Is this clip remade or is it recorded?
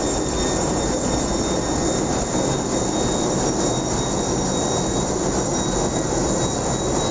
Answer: recorded